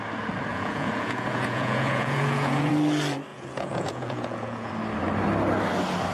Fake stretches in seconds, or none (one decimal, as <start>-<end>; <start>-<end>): 0.5-2.7; 3.3-4.7